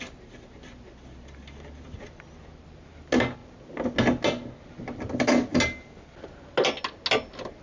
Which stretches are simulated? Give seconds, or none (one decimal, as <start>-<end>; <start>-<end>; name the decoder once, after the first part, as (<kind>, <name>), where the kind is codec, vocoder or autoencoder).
none